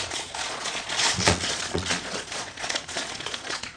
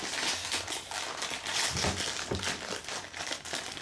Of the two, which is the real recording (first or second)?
second